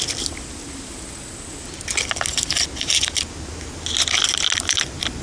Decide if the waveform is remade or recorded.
recorded